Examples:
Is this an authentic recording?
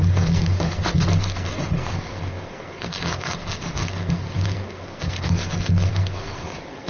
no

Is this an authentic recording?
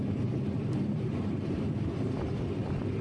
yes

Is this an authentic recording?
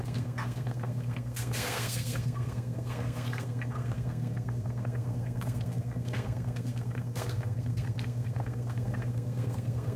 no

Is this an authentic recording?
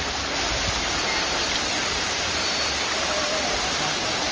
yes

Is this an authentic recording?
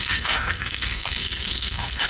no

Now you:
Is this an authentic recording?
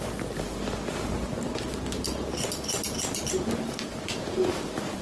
yes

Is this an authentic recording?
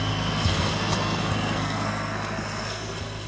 no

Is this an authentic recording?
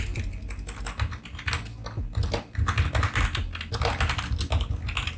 yes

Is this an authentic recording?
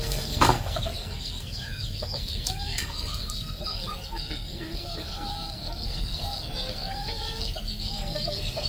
no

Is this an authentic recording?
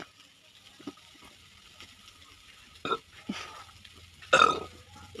yes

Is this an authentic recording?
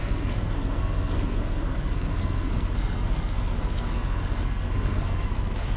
no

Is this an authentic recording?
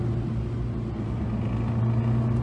yes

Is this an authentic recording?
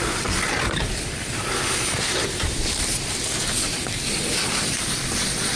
yes